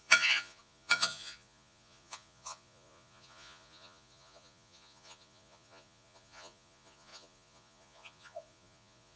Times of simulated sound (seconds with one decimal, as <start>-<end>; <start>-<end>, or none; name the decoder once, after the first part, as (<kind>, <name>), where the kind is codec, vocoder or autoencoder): 0.0-9.2 (vocoder, Vocos)